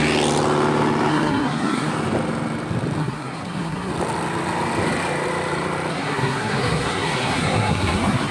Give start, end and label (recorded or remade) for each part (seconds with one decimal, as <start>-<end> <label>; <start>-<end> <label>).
0.0-1.1 recorded; 1.1-1.9 remade; 1.9-3.0 recorded; 3.0-3.9 remade; 3.9-5.9 recorded; 5.9-8.3 remade